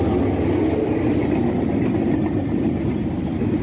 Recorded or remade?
recorded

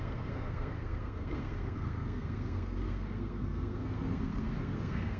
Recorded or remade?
remade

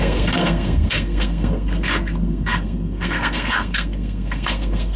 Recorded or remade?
remade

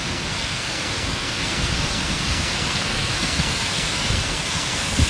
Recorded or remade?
remade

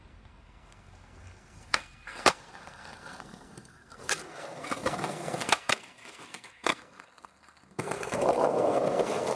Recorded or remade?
remade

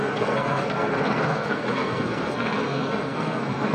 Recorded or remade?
remade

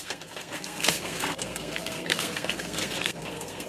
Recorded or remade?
remade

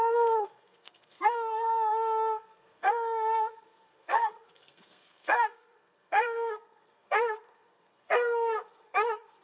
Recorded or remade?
remade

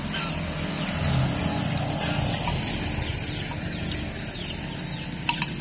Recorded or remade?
recorded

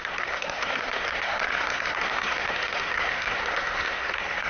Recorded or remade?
remade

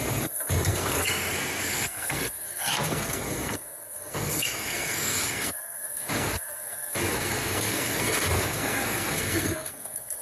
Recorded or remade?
remade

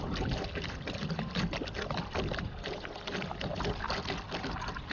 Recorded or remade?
recorded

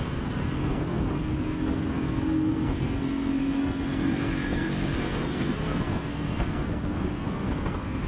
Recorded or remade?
remade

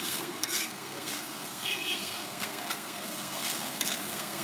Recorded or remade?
remade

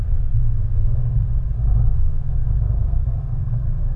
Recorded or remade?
remade